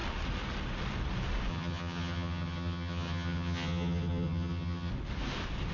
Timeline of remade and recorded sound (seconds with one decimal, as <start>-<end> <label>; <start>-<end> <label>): 0.0-1.5 recorded; 1.5-4.9 remade; 4.9-5.7 recorded